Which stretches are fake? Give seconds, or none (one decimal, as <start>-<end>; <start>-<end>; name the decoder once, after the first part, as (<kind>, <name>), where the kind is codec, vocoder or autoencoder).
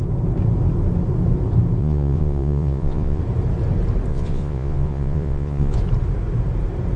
1.8-3.2 (vocoder, Vocos); 4.1-5.8